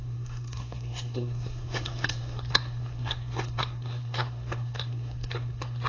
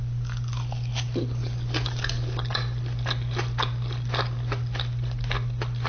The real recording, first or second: second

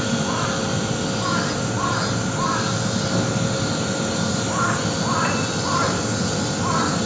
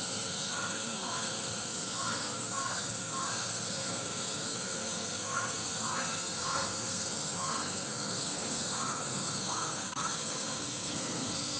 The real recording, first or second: first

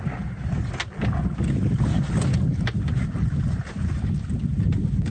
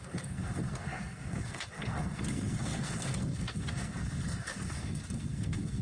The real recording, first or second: first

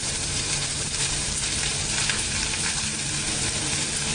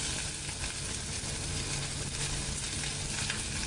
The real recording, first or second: second